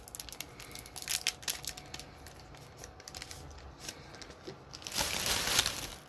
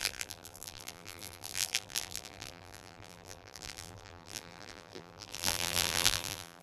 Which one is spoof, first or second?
second